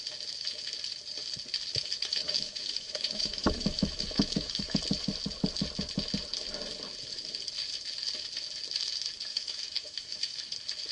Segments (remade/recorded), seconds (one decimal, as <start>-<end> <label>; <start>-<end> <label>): 0.0-1.7 recorded; 1.7-4.8 remade; 4.8-9.3 recorded; 9.3-10.4 remade; 10.4-10.9 recorded